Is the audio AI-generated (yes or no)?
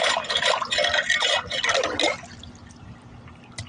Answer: no